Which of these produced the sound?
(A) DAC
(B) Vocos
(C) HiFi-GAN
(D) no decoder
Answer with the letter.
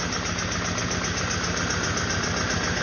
D